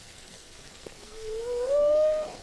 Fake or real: fake